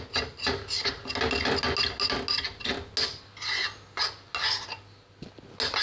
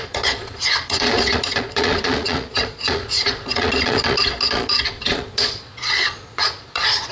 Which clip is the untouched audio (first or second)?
first